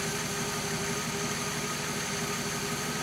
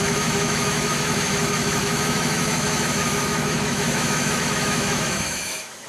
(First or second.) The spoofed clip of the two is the second